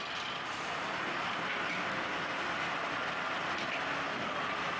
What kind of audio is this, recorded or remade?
recorded